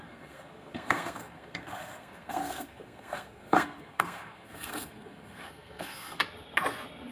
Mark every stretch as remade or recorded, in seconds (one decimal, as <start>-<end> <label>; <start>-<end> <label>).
0.0-6.2 remade; 6.2-7.1 recorded